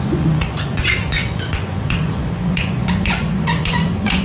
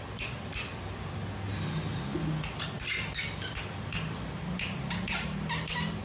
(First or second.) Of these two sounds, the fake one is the first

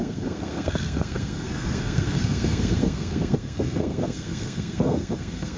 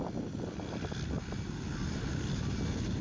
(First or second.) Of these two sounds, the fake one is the first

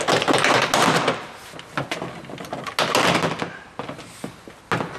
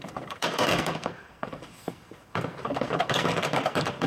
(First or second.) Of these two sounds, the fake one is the second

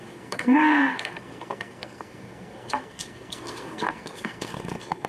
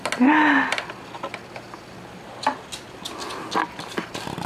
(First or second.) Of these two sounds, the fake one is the first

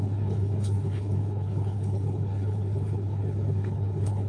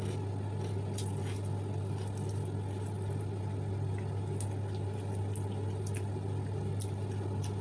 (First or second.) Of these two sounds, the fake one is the first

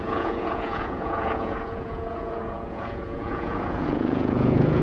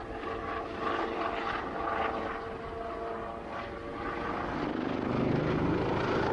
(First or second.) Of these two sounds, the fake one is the first